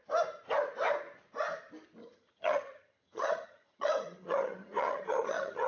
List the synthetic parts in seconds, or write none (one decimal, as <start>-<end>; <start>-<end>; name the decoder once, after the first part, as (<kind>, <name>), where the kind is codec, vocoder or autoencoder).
2.0-5.7 (vocoder, HiFi-GAN)